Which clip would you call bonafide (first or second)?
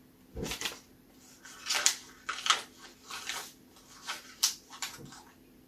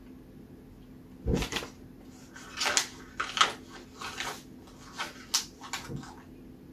second